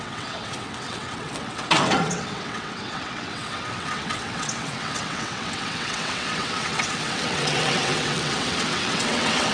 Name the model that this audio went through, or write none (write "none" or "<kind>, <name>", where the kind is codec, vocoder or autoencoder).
vocoder, WaveNeXt